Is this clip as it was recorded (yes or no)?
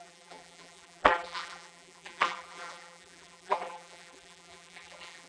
no